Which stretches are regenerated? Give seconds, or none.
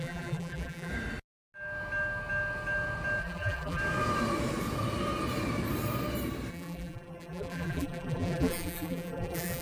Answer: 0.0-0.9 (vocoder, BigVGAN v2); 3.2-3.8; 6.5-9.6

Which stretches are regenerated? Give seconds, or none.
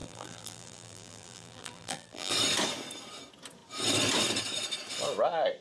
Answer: 0.0-2.3 (vocoder, BigVGAN v2)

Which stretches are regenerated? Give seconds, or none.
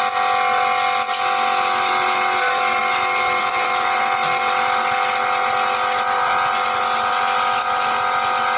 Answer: none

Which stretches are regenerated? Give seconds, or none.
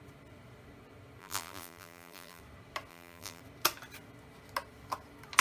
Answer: 1.2-2.4 (vocoder, BigVGAN v2); 2.9-3.4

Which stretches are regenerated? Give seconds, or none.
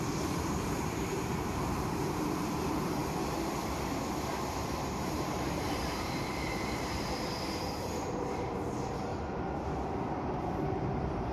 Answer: 0.0-3.0 (vocoder, BigVGAN v2); 4.7-9.1; 10.5-11.3